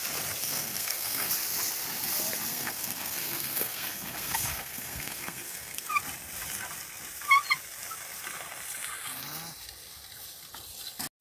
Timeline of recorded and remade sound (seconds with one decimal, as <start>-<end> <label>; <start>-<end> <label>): 0.0-0.4 recorded; 0.4-1.3 remade; 1.3-2.5 recorded; 2.5-5.9 remade; 5.9-11.2 recorded